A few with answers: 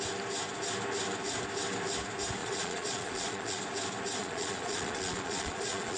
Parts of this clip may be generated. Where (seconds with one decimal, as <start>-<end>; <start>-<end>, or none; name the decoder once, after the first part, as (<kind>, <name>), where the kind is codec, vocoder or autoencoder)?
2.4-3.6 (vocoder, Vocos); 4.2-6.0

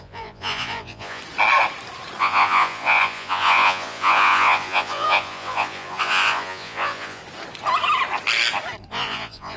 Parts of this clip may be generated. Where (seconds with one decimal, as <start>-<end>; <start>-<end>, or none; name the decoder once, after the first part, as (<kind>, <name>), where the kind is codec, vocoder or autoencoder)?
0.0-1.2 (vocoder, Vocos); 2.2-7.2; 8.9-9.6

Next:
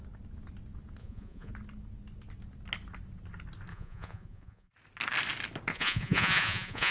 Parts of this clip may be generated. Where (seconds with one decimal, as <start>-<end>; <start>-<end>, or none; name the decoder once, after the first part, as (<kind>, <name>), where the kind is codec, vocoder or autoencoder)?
1.0-1.5 (vocoder, Vocos); 3.7-4.7; 5.7-6.9

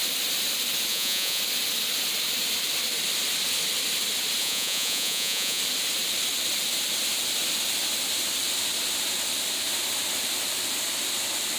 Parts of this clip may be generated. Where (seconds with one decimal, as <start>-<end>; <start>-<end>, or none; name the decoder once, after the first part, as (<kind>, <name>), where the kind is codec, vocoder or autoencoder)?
0.9-1.4 (vocoder, Vocos); 4.4-5.6

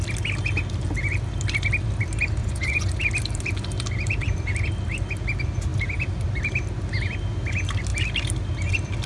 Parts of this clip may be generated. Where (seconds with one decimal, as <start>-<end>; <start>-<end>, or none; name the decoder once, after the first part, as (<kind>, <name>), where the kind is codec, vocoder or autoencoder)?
2.4-2.9 (vocoder, Vocos)

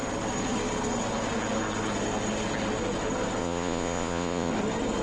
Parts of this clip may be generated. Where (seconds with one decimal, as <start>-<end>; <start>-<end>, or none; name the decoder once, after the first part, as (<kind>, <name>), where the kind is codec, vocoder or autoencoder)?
3.4-4.5 (vocoder, Vocos)